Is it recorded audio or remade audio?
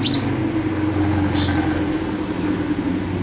recorded